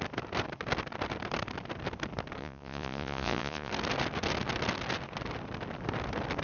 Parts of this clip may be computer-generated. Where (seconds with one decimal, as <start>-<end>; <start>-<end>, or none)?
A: 2.4-3.7